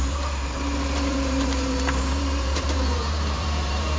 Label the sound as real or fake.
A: fake